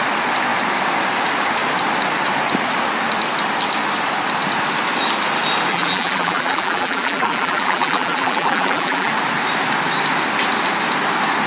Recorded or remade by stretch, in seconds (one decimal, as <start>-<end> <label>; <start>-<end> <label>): 0.0-5.7 recorded; 5.7-9.1 remade; 9.1-11.5 recorded